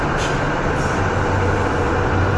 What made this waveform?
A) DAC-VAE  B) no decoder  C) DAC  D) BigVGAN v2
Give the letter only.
B